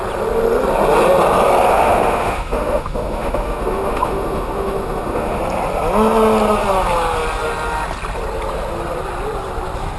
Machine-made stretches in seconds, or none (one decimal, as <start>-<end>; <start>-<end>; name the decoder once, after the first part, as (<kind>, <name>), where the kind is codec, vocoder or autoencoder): 1.7-5.4 (autoencoder, DAC-VAE)